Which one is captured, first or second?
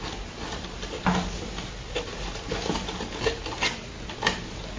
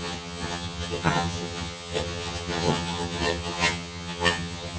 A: first